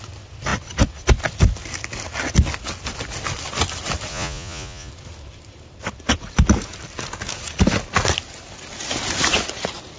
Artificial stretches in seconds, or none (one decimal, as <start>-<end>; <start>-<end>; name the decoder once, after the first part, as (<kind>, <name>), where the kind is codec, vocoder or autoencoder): 4.1-4.9 (vocoder, Vocos)